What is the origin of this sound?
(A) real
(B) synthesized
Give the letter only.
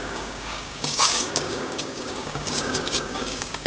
B